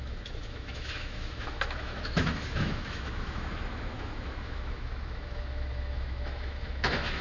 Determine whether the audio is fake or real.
fake